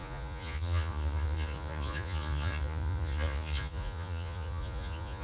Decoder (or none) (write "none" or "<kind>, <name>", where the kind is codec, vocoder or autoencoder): vocoder, Vocos